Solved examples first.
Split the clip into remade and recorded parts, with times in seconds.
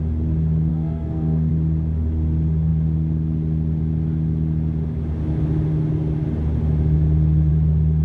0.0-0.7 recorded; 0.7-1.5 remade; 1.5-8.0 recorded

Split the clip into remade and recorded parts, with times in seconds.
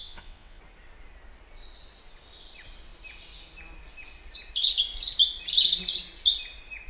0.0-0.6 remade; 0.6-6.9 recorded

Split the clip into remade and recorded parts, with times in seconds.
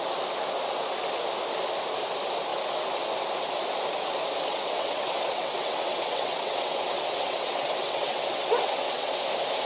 0.0-4.5 recorded; 4.5-9.1 remade; 9.1-9.6 recorded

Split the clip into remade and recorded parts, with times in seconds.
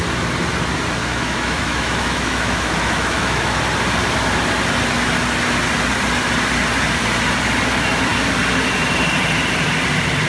0.0-1.0 recorded; 1.0-3.6 remade; 3.6-10.3 recorded